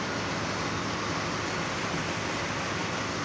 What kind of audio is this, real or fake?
real